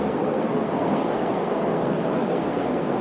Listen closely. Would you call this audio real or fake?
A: fake